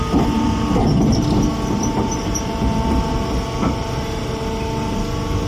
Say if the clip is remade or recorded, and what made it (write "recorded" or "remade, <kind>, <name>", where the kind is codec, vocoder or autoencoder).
recorded